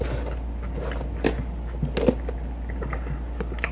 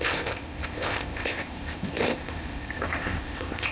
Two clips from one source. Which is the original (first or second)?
first